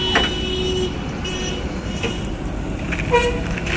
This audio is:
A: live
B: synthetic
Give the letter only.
A